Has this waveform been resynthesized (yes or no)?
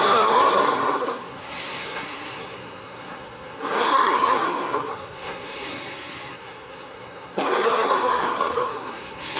yes